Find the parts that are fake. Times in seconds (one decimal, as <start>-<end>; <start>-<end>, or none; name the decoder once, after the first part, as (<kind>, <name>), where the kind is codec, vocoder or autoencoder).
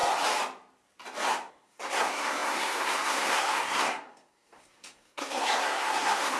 1.5-6.4 (codec, SNAC)